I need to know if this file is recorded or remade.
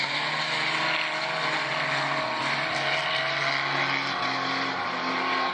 recorded